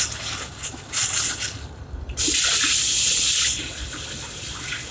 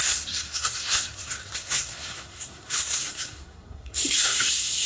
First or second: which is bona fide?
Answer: first